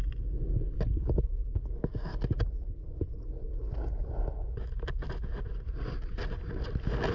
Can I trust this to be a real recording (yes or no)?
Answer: yes